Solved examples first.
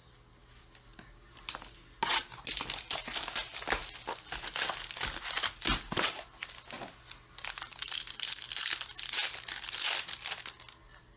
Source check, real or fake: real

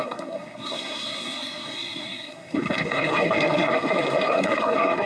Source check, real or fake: fake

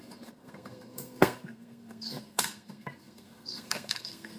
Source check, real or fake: fake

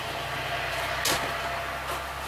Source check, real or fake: real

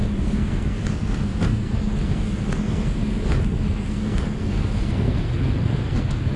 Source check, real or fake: fake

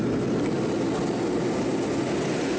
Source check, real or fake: real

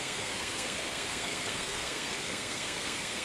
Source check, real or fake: fake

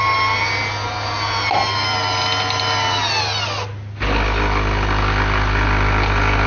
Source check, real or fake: real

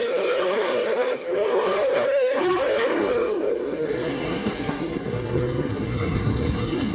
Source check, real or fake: fake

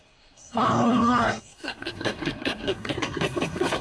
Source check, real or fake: fake